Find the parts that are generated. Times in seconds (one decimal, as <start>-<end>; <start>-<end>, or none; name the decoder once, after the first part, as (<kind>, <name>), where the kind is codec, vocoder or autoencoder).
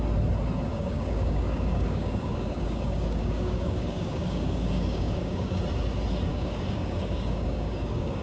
0.7-5.6 (codec, DAC); 6.3-8.2